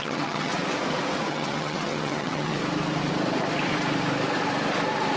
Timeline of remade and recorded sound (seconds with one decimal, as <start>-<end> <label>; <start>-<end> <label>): 0.0-0.5 remade; 0.5-1.3 recorded; 1.3-2.6 remade; 2.6-5.2 recorded